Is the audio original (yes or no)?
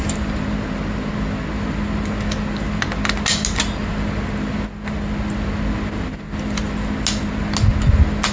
yes